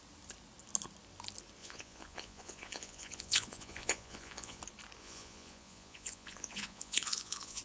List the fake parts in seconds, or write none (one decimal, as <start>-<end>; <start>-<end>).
1.6-4.6; 5.0-7.6